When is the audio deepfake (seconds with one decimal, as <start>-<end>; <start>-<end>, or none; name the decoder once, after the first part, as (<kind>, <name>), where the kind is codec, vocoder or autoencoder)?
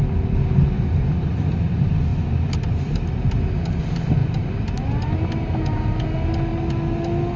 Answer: none